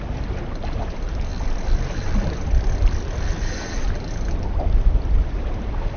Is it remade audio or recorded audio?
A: recorded